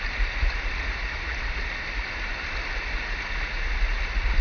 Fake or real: real